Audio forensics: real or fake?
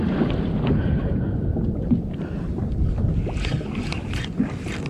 real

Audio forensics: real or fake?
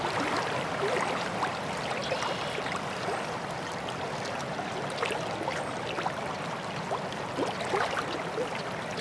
real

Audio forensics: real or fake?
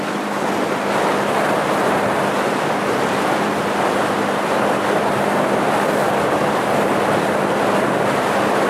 real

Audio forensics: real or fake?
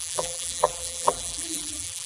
fake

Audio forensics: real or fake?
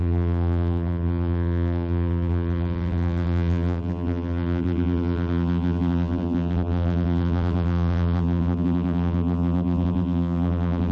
fake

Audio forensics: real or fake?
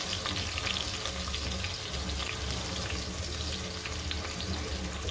real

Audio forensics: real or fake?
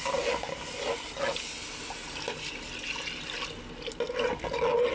real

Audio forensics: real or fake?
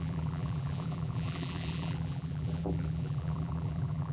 fake